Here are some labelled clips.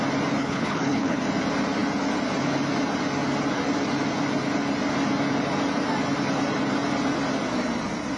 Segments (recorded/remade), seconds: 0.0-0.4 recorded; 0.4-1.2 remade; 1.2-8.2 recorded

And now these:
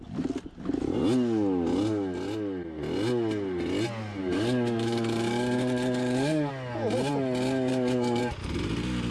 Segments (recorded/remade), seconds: 0.0-4.2 recorded; 4.2-6.5 remade; 6.5-7.7 recorded; 7.7-8.2 remade; 8.2-9.1 recorded

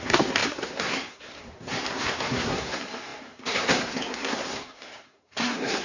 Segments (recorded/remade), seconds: 0.0-5.8 remade

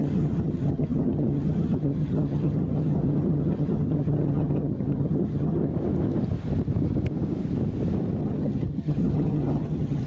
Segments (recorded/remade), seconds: 0.0-5.7 remade; 5.7-8.2 recorded; 8.2-10.1 remade

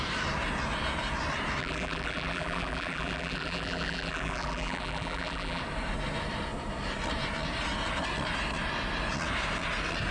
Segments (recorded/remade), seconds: 0.0-1.6 recorded; 1.6-5.6 remade; 5.6-10.1 recorded

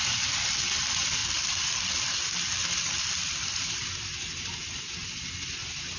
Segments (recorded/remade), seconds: 0.0-1.2 recorded; 1.2-4.8 remade; 4.8-6.0 recorded

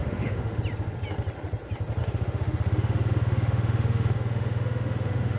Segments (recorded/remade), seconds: 0.0-0.6 remade; 0.6-2.0 recorded; 2.0-5.4 remade

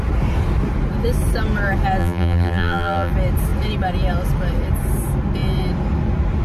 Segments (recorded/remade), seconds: 0.0-2.0 recorded; 2.0-3.1 remade; 3.1-6.4 recorded